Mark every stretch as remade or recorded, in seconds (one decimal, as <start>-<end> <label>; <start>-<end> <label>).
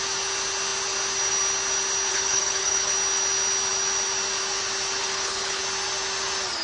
0.0-2.1 recorded; 2.1-2.9 remade; 2.9-5.0 recorded; 5.0-5.6 remade; 5.6-6.6 recorded